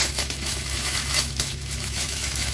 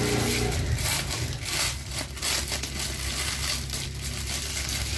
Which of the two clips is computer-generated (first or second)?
first